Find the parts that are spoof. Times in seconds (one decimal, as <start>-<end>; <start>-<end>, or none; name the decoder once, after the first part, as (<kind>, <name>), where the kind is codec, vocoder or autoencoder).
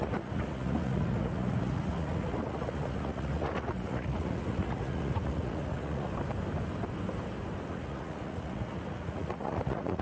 0.0-6.1 (vocoder, Vocos); 7.7-10.0